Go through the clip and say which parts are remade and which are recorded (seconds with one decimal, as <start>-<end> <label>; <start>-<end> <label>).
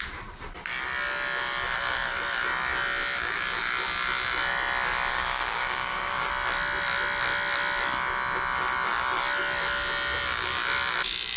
0.0-5.1 recorded; 5.1-6.3 remade; 6.3-11.4 recorded